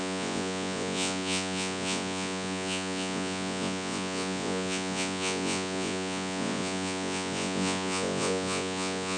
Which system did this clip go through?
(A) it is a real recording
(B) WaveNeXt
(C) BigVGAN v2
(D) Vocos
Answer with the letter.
D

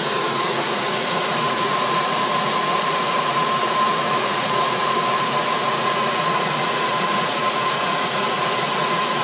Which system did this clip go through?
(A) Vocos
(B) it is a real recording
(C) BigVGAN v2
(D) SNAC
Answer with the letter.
A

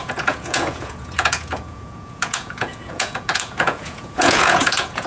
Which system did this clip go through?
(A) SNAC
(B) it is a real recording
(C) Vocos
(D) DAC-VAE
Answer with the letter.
C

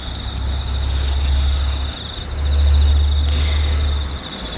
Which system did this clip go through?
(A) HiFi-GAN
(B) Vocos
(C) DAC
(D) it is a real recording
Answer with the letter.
D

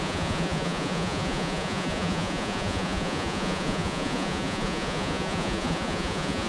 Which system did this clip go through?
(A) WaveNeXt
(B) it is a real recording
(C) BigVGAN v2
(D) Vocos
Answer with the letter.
D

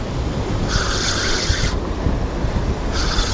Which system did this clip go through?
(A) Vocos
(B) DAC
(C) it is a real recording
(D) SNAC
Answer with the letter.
C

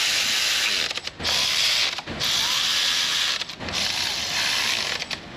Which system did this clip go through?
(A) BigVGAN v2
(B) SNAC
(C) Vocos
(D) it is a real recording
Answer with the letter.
D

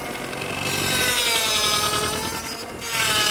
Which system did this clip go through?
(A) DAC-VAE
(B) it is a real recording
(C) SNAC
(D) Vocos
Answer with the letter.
B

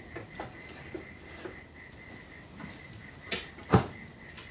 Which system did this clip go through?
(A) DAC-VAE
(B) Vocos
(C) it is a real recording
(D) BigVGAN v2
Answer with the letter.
C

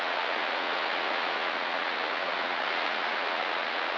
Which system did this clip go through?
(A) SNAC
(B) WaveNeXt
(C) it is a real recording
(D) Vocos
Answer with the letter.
D